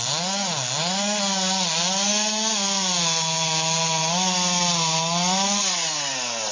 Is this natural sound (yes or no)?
yes